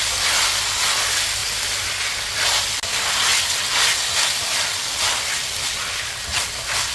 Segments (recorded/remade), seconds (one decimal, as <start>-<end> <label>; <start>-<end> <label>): 0.0-6.9 recorded